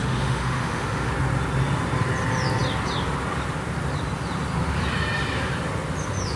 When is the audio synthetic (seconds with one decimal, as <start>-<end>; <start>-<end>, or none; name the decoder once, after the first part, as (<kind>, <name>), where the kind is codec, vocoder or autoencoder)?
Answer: 0.0-1.1 (autoencoder, DAC-VAE)